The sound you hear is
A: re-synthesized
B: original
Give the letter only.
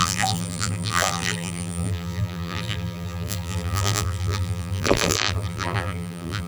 A